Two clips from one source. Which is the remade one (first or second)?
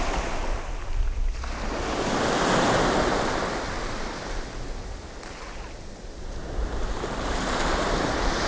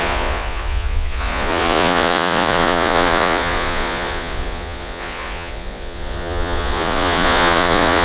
second